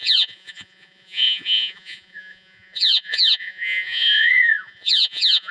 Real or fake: fake